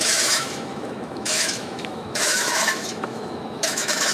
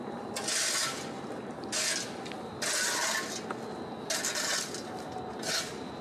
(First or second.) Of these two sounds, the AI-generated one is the first